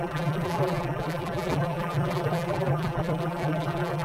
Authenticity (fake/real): fake